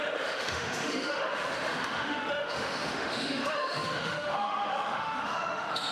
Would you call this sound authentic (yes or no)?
no